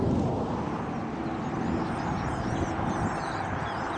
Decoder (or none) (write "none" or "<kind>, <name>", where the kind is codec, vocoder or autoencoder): none